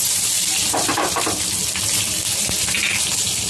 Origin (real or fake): fake